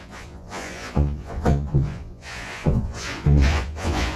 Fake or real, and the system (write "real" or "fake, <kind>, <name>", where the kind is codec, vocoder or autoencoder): fake, vocoder, Vocos